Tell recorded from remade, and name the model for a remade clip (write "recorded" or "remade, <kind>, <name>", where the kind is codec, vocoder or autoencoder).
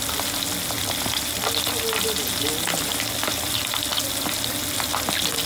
recorded